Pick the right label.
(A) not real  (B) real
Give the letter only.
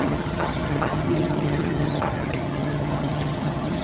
A